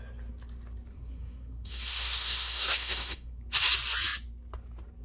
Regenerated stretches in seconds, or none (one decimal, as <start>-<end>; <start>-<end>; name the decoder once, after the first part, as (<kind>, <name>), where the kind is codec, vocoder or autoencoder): 0.9-3.4 (codec, SNAC)